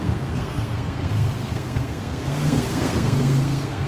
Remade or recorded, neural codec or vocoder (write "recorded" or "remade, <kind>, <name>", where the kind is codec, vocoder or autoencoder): remade, codec, SNAC